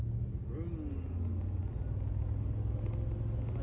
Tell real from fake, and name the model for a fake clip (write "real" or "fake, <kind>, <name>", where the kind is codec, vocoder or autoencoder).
real